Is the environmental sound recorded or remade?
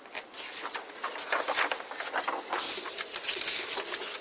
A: recorded